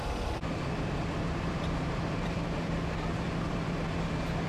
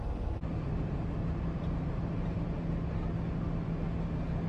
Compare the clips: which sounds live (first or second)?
second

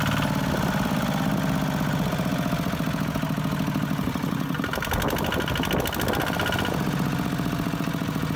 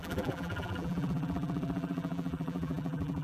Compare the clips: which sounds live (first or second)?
first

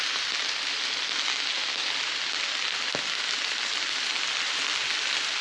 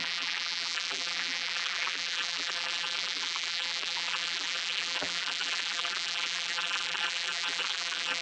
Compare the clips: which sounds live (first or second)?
first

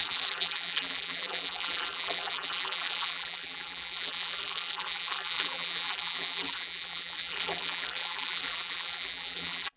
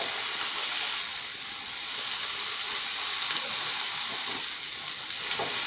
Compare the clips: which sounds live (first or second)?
second